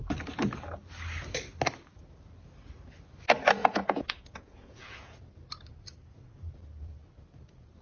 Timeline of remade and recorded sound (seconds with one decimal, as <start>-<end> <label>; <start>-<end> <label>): 0.0-3.6 recorded; 3.6-5.2 remade; 5.2-7.8 recorded